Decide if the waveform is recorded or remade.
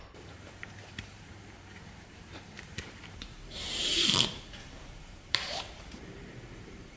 remade